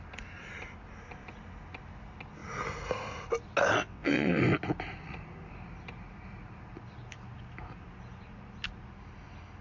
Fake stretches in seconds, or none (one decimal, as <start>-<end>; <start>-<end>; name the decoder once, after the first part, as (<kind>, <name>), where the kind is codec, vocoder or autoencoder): 3.8-4.4 (vocoder, WaveNeXt)